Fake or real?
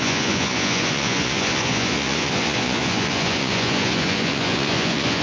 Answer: fake